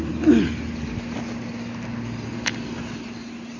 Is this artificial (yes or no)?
no